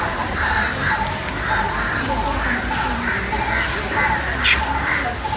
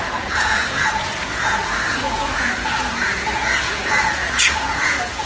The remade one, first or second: second